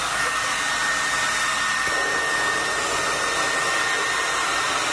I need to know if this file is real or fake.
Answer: real